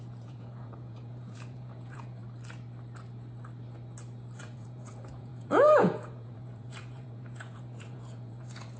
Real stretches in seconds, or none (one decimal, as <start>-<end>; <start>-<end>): 2.2-4.4